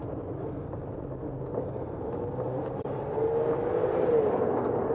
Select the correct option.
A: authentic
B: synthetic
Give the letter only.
A